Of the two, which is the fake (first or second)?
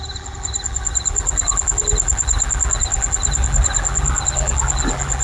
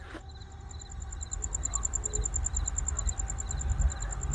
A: first